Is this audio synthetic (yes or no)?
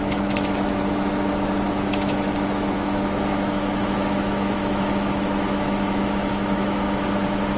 yes